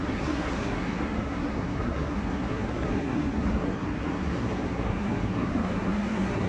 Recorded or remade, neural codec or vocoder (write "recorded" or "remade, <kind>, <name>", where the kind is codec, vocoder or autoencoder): remade, codec, SNAC